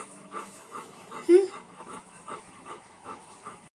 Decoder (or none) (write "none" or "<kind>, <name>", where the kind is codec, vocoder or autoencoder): autoencoder, DAC-VAE